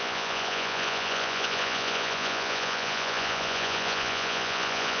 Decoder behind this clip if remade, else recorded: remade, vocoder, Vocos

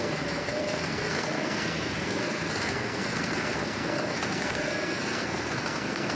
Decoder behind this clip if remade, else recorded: remade, codec, SNAC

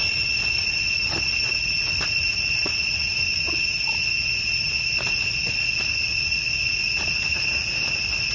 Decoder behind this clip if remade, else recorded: recorded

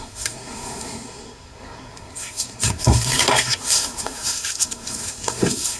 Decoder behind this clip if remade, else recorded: remade, codec, SNAC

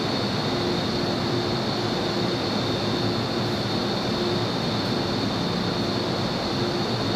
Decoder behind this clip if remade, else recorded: recorded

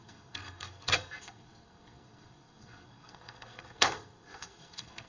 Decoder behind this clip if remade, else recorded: remade, codec, SNAC